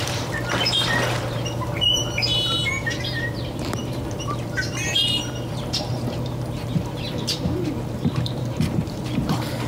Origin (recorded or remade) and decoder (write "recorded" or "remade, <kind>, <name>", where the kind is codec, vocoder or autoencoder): remade, vocoder, BigVGAN v2